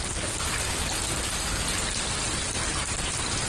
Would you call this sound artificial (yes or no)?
yes